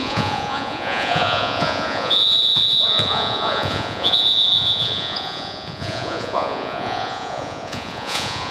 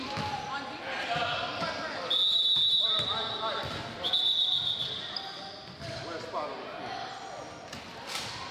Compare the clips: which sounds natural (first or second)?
second